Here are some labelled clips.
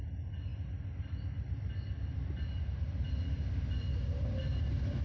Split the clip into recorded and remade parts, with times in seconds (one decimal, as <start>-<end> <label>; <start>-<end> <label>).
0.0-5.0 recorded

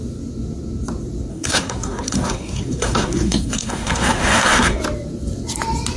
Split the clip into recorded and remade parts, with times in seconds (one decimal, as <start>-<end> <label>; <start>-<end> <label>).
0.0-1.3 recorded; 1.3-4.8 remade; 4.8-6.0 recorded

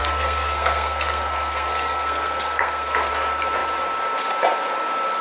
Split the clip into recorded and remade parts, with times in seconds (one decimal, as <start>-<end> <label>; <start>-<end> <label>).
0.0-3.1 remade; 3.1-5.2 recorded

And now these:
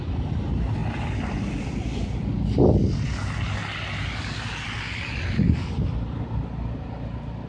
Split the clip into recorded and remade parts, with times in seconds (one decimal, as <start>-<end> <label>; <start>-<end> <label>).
0.0-7.5 recorded

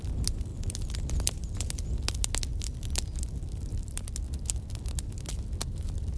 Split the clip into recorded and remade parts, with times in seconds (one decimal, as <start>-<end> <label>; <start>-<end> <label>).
0.0-6.2 recorded

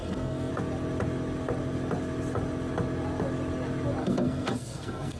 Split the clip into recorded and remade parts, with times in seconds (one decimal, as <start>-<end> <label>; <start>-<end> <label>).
0.0-0.5 remade; 0.5-4.0 recorded; 4.0-5.2 remade

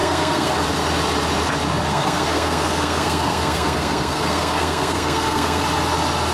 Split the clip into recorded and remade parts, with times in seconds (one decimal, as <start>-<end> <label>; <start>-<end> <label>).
0.0-0.5 remade; 0.5-1.9 recorded; 1.9-5.6 remade; 5.6-6.3 recorded

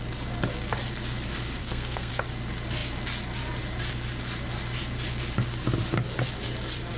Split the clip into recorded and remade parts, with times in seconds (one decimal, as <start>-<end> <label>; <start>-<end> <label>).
0.0-1.6 recorded; 1.6-2.1 remade; 2.1-7.0 recorded